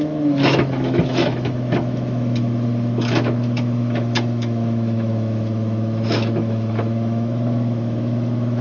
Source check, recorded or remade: remade